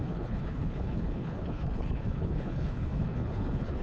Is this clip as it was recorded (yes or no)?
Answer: no